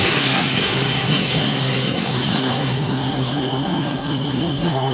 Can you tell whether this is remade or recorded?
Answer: remade